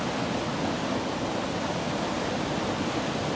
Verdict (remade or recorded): recorded